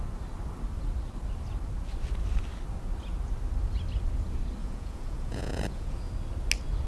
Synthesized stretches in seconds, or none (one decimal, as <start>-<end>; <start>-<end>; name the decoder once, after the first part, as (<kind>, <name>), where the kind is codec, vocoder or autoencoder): 4.6-6.1 (vocoder, Vocos)